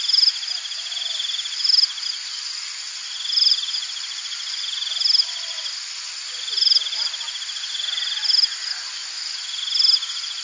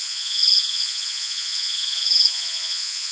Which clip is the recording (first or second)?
first